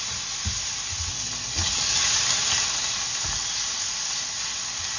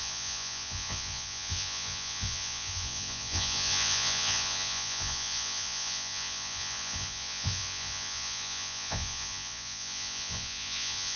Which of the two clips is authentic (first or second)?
first